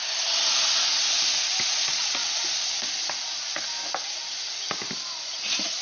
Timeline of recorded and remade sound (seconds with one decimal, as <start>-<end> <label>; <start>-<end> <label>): 0.0-5.8 recorded